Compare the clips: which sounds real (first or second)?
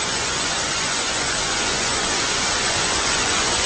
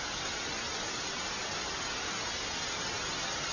second